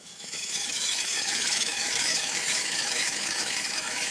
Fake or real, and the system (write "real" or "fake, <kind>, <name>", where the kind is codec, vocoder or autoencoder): fake, autoencoder, DAC-VAE